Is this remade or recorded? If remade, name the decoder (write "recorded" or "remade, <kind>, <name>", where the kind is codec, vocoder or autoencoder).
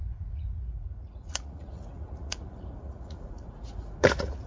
remade, vocoder, Vocos